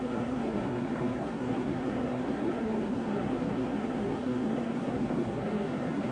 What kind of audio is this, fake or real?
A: fake